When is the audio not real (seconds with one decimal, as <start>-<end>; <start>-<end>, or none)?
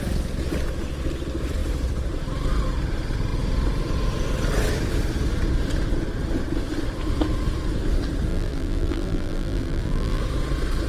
8.3-10.2